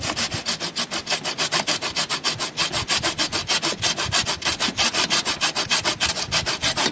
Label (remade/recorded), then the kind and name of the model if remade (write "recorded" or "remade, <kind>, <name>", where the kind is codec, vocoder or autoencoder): recorded